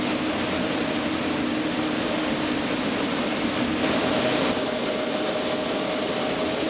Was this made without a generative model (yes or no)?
yes